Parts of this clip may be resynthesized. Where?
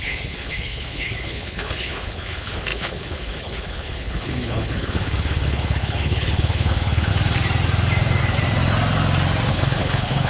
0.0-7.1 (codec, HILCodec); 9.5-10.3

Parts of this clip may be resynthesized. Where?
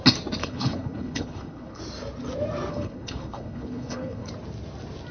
0.4-1.8 (codec, HILCodec); 2.7-4.3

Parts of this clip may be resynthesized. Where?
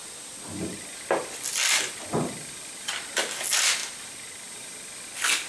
none